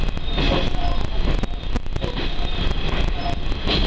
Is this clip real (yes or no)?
yes